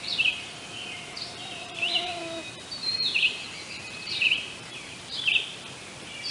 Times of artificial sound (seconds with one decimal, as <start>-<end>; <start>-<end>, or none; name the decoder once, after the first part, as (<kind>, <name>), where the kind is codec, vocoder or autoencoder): 1.4-5.2 (vocoder, BigVGAN v2)